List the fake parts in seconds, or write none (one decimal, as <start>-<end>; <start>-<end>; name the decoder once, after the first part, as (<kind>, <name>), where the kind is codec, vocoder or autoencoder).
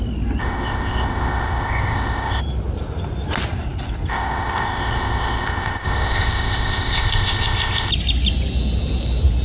0.4-2.4 (codec, ZipCodec); 4.1-7.9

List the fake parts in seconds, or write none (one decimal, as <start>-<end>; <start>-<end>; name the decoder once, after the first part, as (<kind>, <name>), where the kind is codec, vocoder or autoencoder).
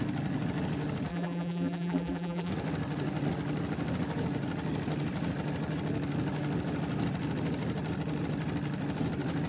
1.1-2.5 (vocoder, BigVGAN v2)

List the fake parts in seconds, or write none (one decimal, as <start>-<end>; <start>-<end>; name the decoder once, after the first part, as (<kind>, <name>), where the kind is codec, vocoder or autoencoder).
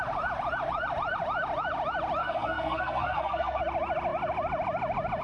2.2-3.6 (codec, SNAC)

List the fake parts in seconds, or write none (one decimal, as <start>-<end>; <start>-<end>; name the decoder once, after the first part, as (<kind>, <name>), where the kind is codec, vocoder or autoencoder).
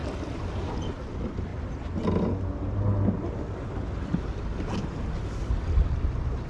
none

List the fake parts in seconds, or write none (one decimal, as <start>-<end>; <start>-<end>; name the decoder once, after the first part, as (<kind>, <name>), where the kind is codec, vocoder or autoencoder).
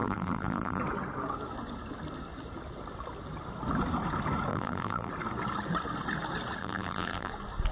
0.0-0.8 (vocoder, BigVGAN v2); 4.5-5.1; 6.6-7.3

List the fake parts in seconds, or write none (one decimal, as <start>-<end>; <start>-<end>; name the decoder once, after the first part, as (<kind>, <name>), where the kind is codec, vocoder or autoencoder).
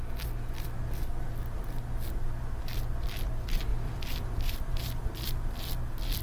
3.7-5.8 (vocoder, BigVGAN v2)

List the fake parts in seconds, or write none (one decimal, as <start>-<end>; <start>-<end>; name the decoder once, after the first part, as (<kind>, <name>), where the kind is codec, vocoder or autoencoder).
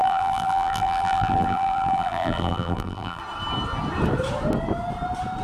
0.0-3.2 (vocoder, BigVGAN v2)